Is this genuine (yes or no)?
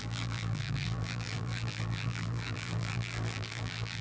no